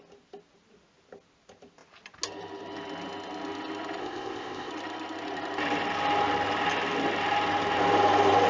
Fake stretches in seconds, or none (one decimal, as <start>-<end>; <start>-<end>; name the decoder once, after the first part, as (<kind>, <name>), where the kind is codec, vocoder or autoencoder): 4.0-4.7 (codec, ZipCodec)